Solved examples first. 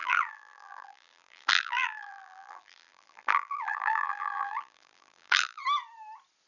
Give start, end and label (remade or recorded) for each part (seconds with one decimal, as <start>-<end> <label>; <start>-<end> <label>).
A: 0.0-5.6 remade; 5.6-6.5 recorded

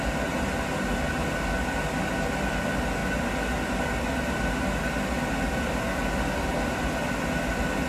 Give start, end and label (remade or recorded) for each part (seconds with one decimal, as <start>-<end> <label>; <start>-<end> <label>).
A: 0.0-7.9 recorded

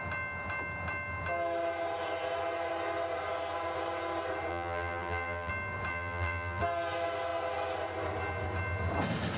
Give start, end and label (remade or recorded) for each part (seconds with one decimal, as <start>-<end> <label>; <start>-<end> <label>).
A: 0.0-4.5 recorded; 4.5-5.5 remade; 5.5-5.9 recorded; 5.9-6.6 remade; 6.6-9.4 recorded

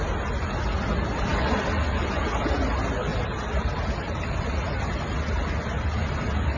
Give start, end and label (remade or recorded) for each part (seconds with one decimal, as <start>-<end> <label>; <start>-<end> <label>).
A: 0.0-1.3 recorded; 1.3-2.1 remade; 2.1-3.1 recorded; 3.1-5.6 remade; 5.6-6.6 recorded

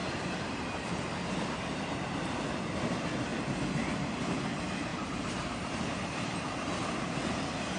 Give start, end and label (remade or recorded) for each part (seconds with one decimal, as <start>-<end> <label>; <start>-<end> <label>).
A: 0.0-4.9 recorded; 4.9-6.6 remade; 6.6-7.8 recorded

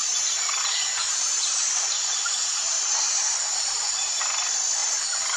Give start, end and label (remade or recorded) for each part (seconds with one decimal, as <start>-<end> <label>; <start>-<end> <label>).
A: 0.0-0.6 remade; 0.6-1.0 recorded; 1.0-4.2 remade; 4.2-4.8 recorded; 4.8-5.4 remade